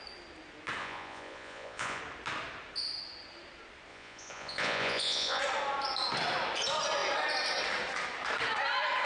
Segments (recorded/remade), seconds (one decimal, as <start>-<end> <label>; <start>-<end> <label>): 0.0-0.8 recorded; 0.8-2.0 remade; 2.0-3.9 recorded; 3.9-5.4 remade; 5.4-9.1 recorded